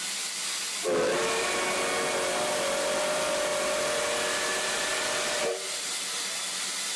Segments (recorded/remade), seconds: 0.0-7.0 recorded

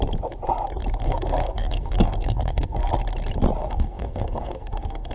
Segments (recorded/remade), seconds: 0.0-1.0 recorded; 1.0-2.9 remade; 2.9-3.6 recorded; 3.6-5.1 remade